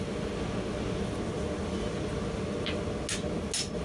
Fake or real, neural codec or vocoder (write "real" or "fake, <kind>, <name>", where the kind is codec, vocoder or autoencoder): real